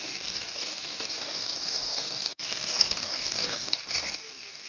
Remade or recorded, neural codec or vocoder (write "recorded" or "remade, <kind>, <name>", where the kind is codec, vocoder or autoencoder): remade, codec, DAC